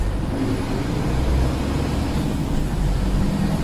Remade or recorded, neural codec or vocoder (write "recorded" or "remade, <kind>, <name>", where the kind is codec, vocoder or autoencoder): recorded